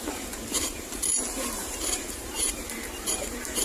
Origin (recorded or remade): remade